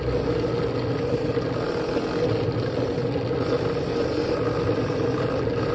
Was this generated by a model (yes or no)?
no